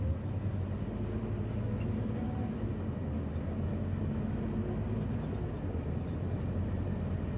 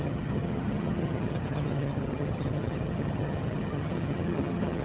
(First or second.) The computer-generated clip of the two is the second